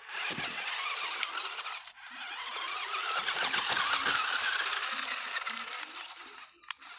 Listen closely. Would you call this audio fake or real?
real